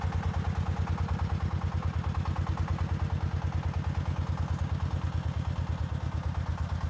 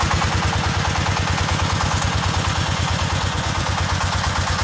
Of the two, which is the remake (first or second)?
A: second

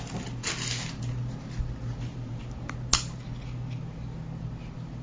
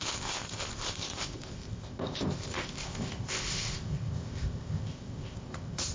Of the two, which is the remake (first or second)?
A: second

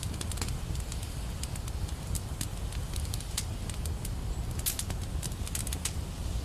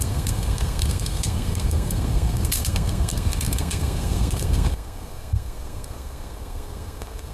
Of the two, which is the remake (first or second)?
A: second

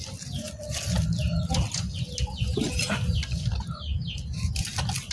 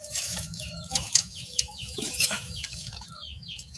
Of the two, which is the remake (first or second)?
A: second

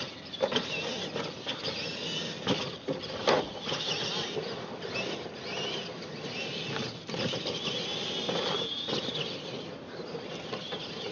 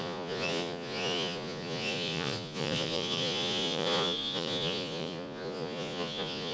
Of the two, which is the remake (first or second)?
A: second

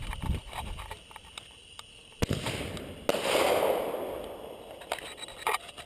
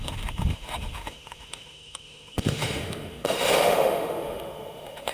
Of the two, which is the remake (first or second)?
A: second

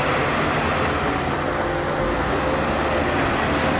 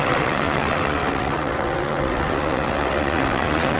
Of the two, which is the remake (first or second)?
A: second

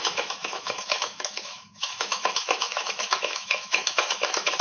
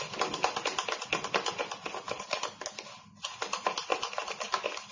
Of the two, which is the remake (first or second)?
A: first